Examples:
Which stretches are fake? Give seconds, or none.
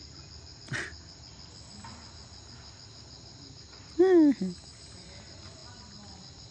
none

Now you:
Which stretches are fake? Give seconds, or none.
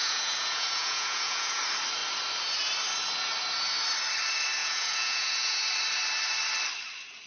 0.0-1.6 (vocoder, Vocos); 4.6-5.6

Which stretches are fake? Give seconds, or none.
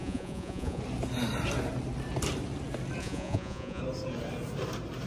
0.0-0.8 (vocoder, Vocos); 3.0-3.8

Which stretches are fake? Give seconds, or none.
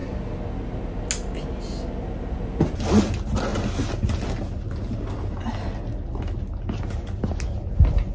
none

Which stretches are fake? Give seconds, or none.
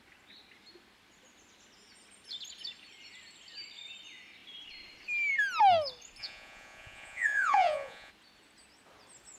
6.2-8.1 (vocoder, Vocos)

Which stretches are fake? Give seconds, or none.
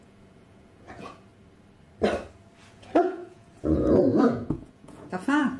0.0-1.3 (vocoder, Vocos); 2.7-5.6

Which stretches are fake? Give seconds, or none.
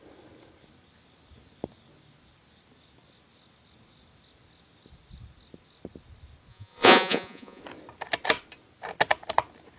6.5-7.6 (vocoder, Vocos)